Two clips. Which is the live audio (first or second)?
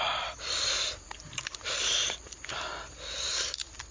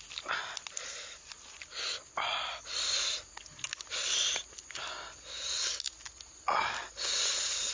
second